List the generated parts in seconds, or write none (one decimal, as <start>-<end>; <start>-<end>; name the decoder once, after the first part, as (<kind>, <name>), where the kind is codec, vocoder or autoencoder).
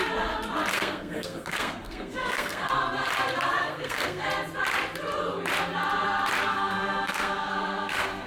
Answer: 0.7-2.7 (codec, SNAC); 3.6-4.3; 6.5-8.3